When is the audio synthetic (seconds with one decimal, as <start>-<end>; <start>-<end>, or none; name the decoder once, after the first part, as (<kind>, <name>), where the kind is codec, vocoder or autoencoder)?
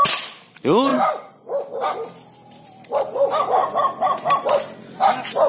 none